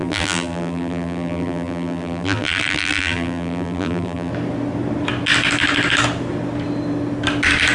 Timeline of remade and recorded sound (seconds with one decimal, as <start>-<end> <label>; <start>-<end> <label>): 0.0-4.3 remade; 4.3-7.7 recorded